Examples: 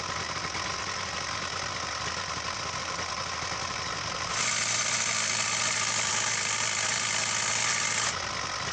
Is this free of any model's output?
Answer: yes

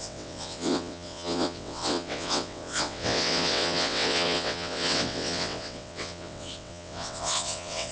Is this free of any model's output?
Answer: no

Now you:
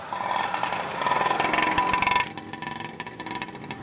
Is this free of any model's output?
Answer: yes